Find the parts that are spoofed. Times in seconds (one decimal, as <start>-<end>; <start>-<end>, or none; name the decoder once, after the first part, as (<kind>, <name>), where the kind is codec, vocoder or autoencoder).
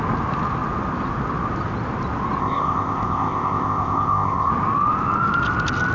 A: 2.4-4.5 (codec, ZipCodec)